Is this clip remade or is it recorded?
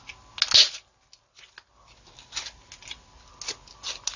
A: recorded